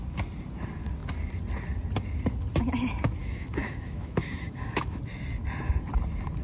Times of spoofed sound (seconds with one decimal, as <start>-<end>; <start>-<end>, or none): 3.2-5.0